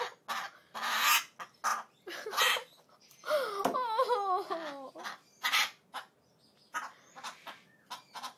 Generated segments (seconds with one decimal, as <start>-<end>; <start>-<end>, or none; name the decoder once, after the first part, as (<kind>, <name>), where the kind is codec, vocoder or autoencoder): none